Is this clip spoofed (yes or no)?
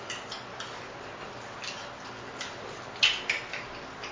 no